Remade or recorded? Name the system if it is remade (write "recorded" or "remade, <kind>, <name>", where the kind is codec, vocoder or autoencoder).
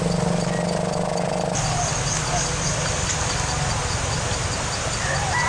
recorded